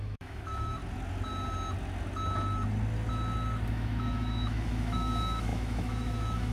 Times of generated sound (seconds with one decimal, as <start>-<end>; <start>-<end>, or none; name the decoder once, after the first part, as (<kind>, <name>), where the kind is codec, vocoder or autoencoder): 0.0-0.8 (autoencoder, DAC-VAE); 3.7-6.5